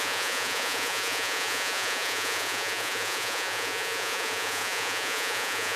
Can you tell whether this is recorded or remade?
remade